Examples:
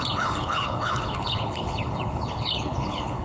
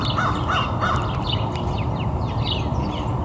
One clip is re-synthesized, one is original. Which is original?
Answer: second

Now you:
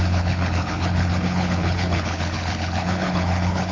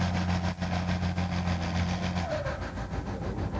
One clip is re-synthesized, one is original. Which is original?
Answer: second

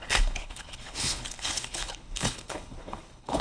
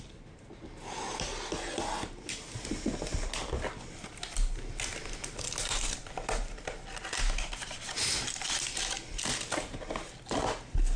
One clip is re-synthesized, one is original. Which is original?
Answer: second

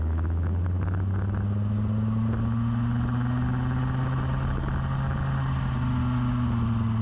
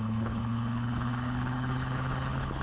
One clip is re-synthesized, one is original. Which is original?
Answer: first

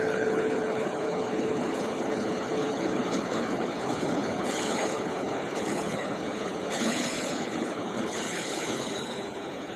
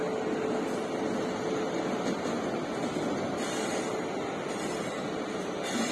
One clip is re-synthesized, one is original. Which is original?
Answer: second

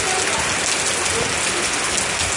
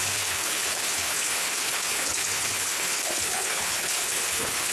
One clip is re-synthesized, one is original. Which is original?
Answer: first